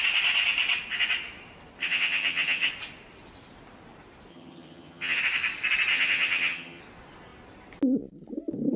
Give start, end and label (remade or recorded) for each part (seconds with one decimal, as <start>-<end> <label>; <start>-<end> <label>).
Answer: 0.0-1.8 recorded; 1.8-2.7 remade; 2.7-4.3 recorded; 4.3-5.2 remade; 5.2-5.9 recorded; 5.9-6.8 remade; 6.8-8.8 recorded